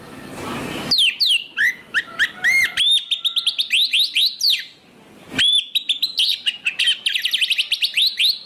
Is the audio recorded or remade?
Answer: recorded